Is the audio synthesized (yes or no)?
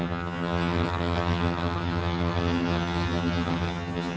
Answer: yes